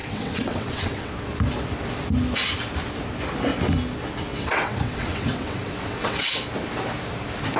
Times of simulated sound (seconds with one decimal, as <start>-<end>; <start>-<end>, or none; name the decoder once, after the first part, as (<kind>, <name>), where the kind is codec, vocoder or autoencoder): 0.0-1.1 (vocoder, WaveNeXt); 4.3-6.3